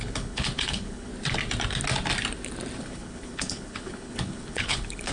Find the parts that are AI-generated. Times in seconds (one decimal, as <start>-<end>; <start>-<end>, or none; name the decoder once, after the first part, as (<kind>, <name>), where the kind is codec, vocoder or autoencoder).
0.0-1.1 (codec, HILCodec); 2.8-5.1